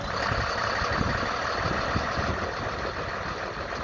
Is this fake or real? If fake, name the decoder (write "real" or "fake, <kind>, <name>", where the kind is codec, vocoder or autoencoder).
real